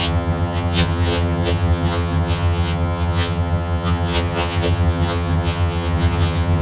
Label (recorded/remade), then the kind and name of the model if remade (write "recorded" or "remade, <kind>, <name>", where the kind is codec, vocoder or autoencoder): remade, vocoder, HiFi-GAN